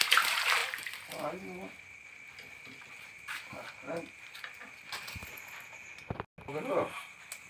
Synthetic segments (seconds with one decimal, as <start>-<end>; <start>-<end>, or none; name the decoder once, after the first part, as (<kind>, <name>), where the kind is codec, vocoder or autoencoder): none